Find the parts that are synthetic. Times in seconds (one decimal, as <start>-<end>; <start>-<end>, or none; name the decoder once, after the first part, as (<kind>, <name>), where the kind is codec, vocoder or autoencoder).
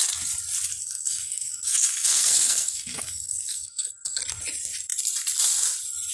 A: 0.8-4.2 (codec, SNAC)